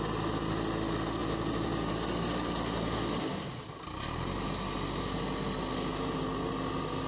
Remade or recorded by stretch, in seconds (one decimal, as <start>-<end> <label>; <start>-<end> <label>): 0.0-7.1 recorded